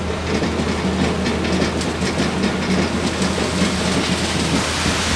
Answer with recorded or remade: recorded